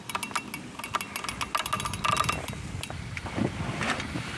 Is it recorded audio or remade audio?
recorded